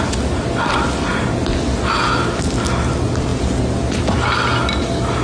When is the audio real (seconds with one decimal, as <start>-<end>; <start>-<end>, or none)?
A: 0.0-5.2